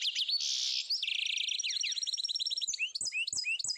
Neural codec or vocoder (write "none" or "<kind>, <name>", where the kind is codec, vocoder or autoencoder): none